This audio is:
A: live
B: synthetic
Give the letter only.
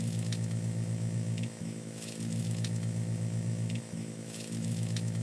B